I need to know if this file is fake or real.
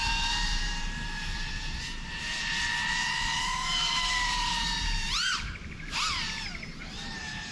fake